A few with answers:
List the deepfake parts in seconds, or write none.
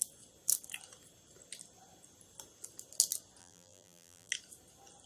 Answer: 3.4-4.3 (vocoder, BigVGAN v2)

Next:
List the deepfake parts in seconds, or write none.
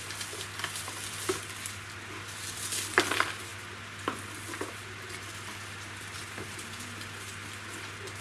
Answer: none